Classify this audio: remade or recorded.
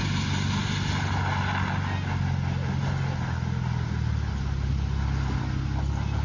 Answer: recorded